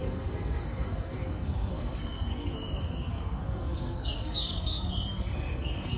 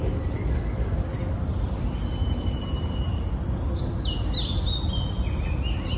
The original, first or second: second